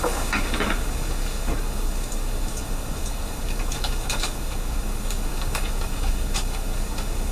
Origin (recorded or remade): remade